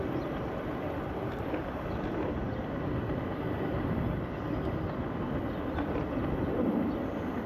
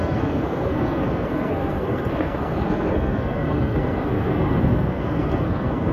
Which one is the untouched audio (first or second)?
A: first